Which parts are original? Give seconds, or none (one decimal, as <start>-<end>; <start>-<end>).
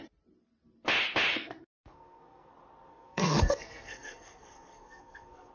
0.0-1.3; 2.5-2.9